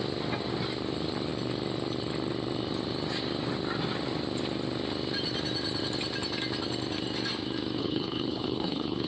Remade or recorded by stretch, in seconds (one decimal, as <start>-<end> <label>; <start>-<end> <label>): 0.0-7.8 recorded; 7.8-9.1 remade